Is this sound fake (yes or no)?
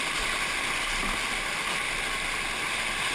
no